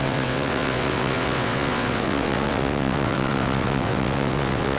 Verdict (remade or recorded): remade